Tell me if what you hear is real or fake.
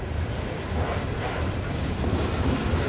fake